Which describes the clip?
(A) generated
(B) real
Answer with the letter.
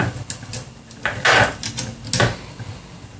B